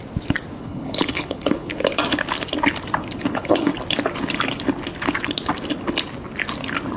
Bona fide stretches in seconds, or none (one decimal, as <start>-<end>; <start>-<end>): 0.0-0.6; 1.7-3.3; 3.7-7.0